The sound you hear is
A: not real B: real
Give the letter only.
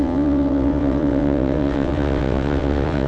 A